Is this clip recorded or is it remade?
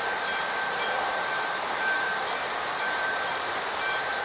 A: remade